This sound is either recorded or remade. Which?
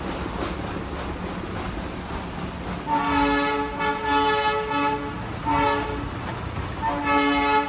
recorded